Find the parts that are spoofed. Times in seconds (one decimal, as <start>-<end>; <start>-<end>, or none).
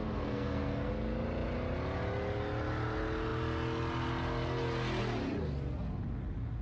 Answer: 0.0-0.9